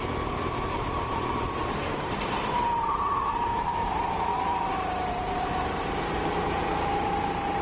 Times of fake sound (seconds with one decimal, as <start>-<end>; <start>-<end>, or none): 0.0-7.6